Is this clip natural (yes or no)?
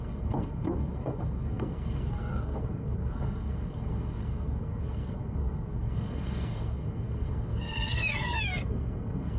no